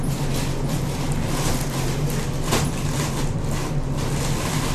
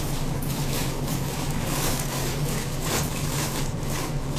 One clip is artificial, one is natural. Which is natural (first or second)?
first